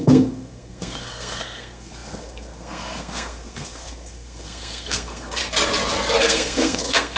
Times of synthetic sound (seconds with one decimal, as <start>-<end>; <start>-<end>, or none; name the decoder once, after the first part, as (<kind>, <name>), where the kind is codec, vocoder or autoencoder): 0.0-5.4 (codec, SNAC); 6.2-7.2